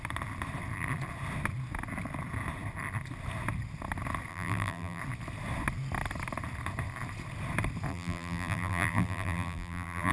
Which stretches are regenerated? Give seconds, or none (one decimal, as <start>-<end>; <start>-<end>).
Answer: 4.3-5.0; 7.9-10.1